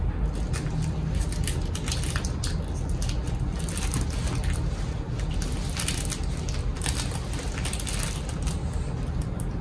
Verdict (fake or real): real